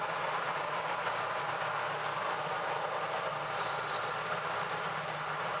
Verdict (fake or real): real